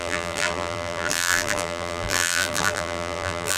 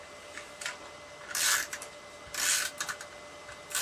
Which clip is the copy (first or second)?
first